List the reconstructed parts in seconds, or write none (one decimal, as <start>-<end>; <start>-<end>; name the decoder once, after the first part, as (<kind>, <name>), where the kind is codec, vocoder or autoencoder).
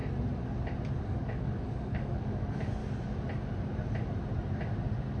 1.0-2.8 (codec, DAC)